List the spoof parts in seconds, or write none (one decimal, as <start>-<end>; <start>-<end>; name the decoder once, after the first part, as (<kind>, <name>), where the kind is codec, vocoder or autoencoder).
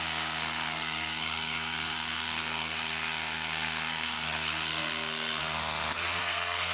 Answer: 0.0-5.4 (codec, SNAC); 6.2-6.7